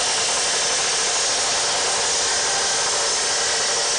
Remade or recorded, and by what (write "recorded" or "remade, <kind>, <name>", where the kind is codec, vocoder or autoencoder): recorded